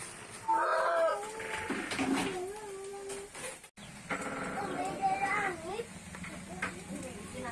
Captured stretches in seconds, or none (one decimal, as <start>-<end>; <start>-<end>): 0.0-4.2; 5.8-7.5